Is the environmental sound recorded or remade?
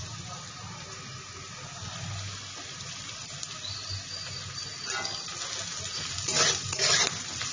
recorded